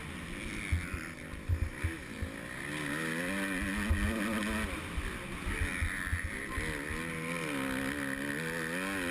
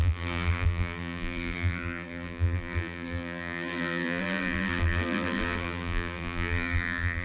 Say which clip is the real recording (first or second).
first